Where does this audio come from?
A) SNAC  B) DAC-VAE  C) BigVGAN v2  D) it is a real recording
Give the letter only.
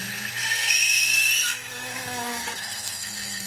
A